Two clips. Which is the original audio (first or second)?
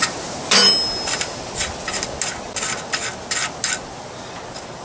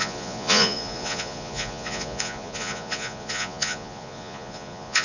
first